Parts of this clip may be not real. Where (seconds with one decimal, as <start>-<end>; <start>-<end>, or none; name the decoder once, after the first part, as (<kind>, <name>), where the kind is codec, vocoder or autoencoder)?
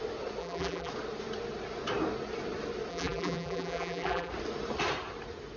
0.4-0.9 (vocoder, BigVGAN v2); 2.9-4.3